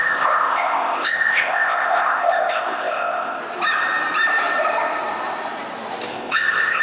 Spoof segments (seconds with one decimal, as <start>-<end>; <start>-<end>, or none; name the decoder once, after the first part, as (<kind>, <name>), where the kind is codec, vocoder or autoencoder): 0.0-3.4 (codec, ZipCodec); 6.1-6.8